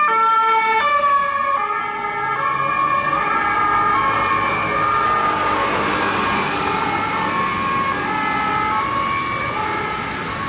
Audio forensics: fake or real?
real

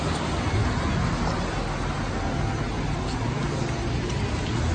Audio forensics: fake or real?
real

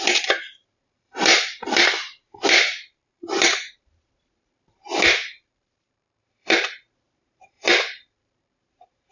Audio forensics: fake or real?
fake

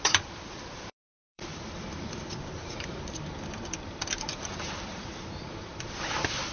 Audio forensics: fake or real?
fake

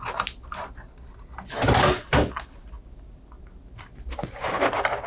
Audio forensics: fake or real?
real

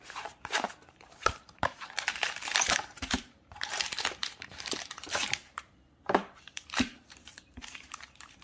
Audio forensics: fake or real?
fake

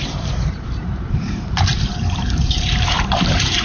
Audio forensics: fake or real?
fake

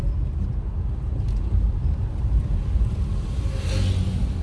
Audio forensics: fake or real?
real